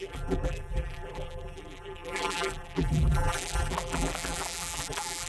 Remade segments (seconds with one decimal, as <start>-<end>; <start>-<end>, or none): 0.0-5.3